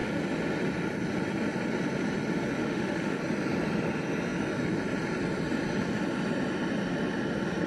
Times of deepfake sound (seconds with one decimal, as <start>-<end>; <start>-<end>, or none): 2.6-3.2